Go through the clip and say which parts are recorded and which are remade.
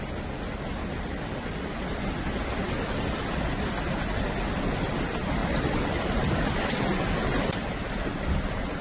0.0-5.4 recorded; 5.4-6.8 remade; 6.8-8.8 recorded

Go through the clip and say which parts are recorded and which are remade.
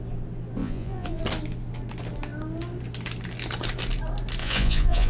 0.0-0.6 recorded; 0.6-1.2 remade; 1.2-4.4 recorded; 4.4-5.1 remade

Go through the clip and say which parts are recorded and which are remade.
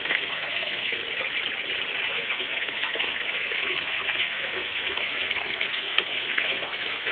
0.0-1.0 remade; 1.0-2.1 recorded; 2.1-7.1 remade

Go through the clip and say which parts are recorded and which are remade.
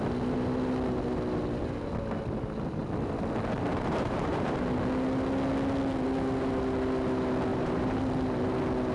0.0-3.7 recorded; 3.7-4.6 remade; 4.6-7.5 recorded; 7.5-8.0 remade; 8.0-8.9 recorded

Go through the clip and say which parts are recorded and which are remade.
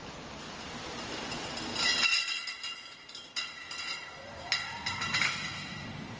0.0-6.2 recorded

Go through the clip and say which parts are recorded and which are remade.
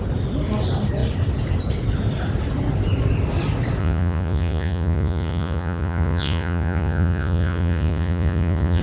0.0-3.8 recorded; 3.8-8.8 remade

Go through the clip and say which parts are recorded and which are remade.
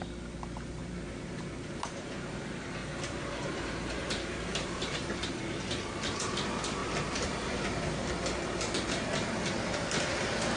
0.0-0.8 recorded; 0.8-2.4 remade; 2.4-2.8 recorded; 2.8-5.4 remade; 5.4-6.8 recorded; 6.8-7.9 remade; 7.9-10.6 recorded